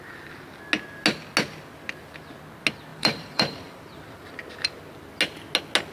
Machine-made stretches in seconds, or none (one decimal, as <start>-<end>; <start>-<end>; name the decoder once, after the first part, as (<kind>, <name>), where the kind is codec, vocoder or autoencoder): 2.9-4.4 (vocoder, BigVGAN v2)